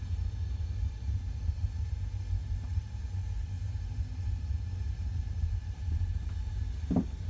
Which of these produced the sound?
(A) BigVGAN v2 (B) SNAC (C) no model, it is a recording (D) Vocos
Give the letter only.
C